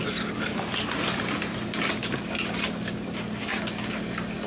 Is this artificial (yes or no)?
no